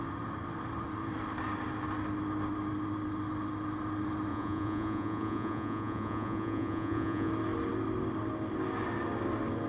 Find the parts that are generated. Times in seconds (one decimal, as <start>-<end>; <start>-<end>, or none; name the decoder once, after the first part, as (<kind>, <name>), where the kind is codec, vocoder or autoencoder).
4.3-7.3 (vocoder, Vocos)